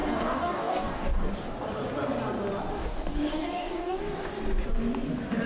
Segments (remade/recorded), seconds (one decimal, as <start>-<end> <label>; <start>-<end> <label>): 0.0-1.3 remade; 1.3-2.7 recorded; 2.7-4.3 remade; 4.3-5.5 recorded